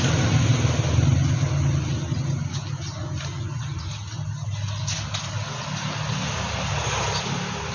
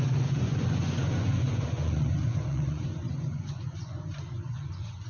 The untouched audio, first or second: first